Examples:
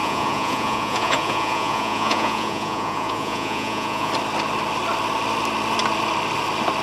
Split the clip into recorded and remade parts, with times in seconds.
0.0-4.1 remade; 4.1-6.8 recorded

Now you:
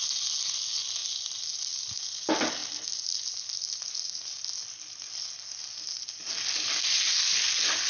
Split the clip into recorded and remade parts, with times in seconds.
0.0-7.9 recorded

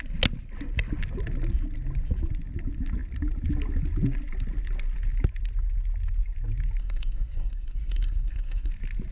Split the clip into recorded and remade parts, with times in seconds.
0.0-6.8 recorded; 6.8-8.7 remade; 8.7-9.1 recorded

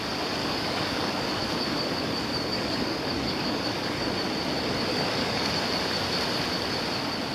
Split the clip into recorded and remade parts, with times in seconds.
0.0-0.4 recorded; 0.4-4.1 remade; 4.1-4.9 recorded; 4.9-5.5 remade; 5.5-7.3 recorded

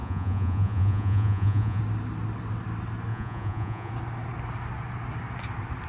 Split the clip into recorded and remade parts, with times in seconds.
0.0-1.8 remade; 1.8-3.1 recorded; 3.1-3.9 remade; 3.9-5.9 recorded

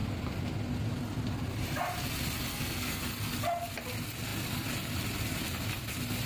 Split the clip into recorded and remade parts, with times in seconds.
0.0-2.5 recorded; 2.5-3.0 remade; 3.0-6.3 recorded

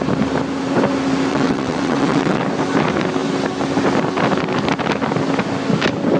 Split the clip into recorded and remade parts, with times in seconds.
0.0-1.3 recorded; 1.3-2.4 remade; 2.4-6.2 recorded

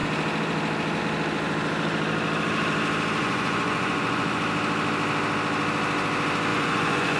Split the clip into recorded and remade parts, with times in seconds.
0.0-3.2 recorded; 3.2-4.4 remade; 4.4-6.5 recorded; 6.5-7.2 remade